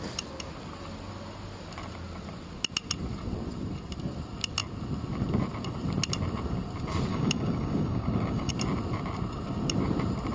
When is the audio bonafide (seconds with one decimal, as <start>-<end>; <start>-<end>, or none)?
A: 0.0-7.1; 8.5-10.3